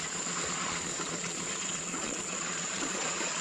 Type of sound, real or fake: fake